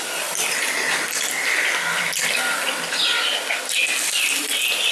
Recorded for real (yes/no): yes